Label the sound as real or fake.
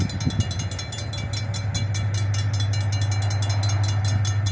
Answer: real